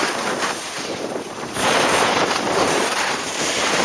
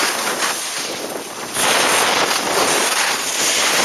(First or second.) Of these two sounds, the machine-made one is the first